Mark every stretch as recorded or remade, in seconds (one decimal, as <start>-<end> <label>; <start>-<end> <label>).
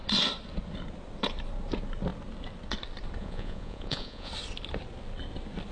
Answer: 0.0-3.2 recorded; 3.2-4.3 remade; 4.3-5.7 recorded